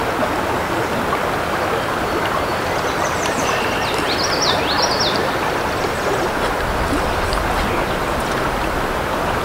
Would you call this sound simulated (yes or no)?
no